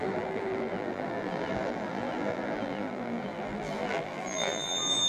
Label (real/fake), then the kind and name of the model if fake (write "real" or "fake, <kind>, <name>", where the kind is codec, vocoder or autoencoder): fake, vocoder, BigVGAN v2